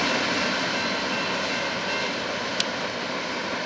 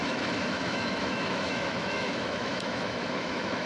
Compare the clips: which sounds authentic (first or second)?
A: first